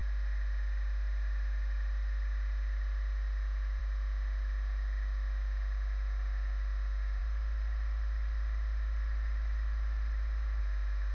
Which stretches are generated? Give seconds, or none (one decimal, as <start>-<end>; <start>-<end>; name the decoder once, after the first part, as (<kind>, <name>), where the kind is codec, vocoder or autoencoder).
7.2-10.6 (vocoder, BigVGAN v2)